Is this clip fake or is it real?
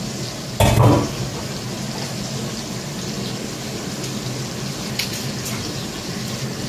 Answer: real